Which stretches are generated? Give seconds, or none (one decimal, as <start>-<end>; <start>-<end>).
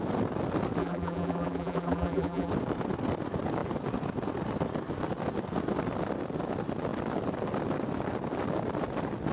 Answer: 0.8-2.5